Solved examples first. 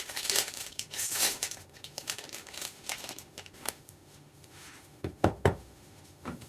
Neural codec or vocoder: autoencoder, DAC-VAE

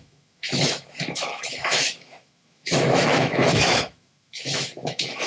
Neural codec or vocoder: autoencoder, DAC-VAE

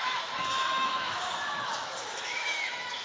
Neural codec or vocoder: autoencoder, DAC-VAE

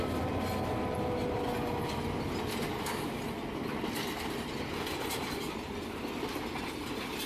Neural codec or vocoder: none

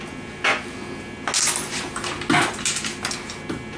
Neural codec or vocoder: none